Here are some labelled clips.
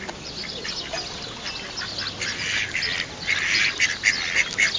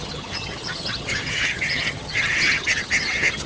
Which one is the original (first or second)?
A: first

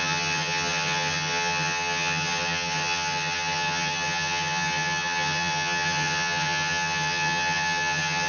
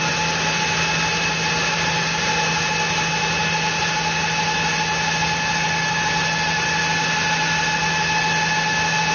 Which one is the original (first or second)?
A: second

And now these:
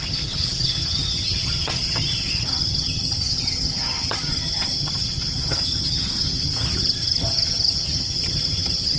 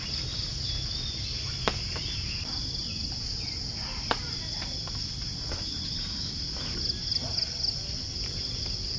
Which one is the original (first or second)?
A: second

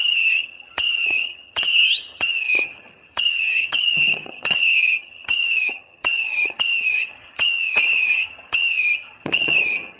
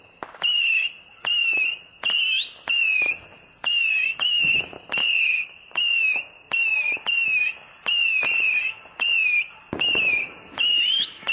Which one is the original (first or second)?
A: second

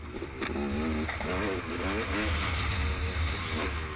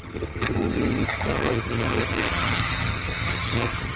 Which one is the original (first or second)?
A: first